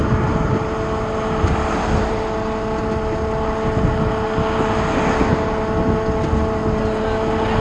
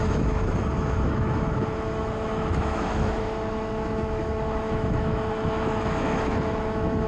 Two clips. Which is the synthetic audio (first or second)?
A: second